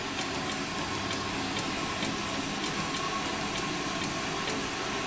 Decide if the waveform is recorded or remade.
recorded